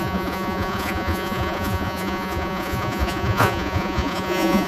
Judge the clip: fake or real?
fake